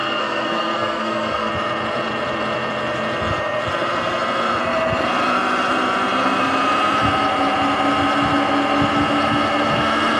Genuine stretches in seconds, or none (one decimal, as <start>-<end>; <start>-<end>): 1.5-10.2